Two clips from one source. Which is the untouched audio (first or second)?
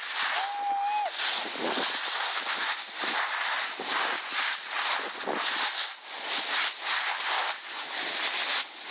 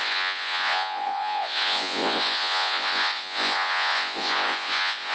first